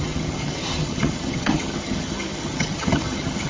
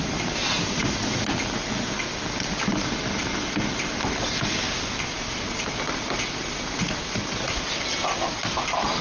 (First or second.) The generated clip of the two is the first